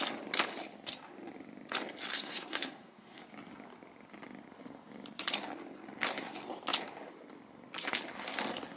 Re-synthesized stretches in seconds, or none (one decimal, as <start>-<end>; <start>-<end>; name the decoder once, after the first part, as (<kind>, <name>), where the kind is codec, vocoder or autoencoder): 2.1-3.2 (codec, SNAC)